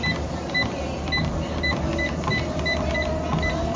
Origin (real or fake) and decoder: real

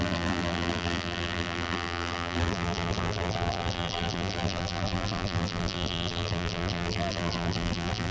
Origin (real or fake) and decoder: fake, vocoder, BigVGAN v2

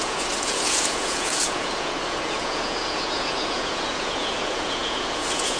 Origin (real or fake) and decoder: fake, vocoder, Vocos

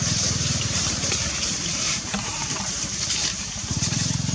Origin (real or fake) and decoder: fake, vocoder, BigVGAN v2